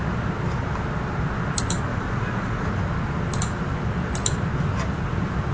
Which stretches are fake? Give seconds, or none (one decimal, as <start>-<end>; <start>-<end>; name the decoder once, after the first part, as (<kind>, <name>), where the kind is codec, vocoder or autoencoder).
1.9-2.8 (vocoder, Vocos)